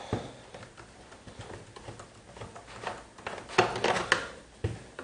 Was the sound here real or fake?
real